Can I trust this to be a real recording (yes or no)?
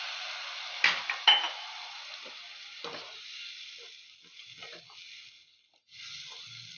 yes